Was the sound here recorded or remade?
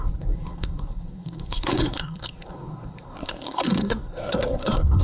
remade